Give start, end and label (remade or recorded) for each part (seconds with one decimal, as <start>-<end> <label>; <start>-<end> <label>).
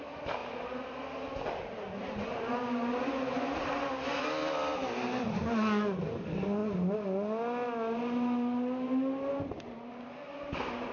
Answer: 0.0-10.9 recorded